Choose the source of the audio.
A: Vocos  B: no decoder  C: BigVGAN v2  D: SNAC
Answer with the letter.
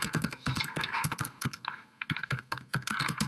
D